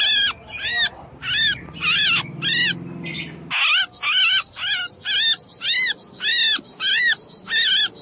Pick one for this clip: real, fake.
real